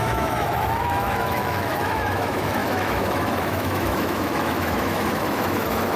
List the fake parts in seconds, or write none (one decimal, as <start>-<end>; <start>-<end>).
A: 0.0-6.0